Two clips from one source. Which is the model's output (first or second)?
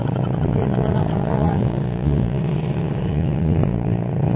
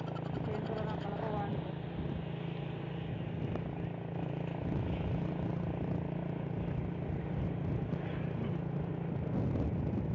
first